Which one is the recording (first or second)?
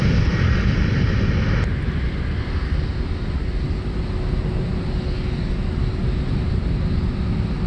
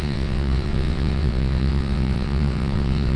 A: first